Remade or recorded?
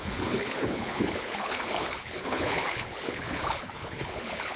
remade